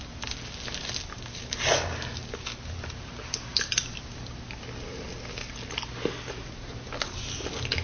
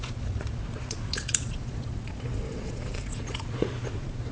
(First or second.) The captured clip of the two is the first